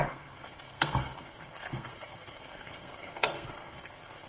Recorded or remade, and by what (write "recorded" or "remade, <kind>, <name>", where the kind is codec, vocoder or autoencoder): remade, codec, SNAC